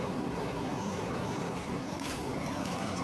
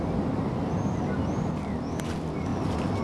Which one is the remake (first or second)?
first